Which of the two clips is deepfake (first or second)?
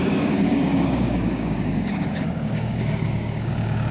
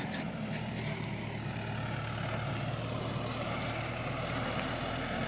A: first